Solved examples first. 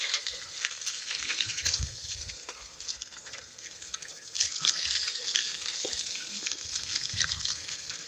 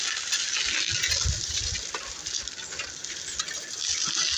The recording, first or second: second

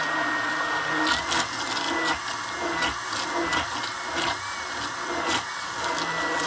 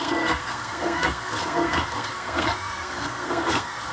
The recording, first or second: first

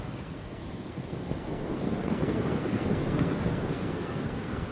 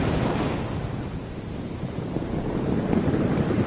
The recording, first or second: second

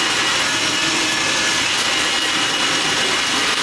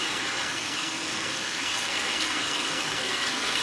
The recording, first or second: first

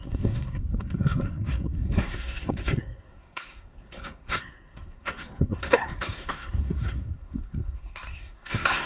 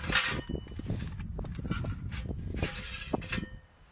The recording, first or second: second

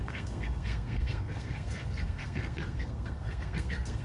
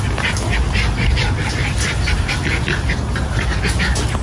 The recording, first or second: second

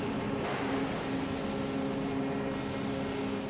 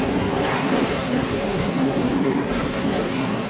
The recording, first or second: first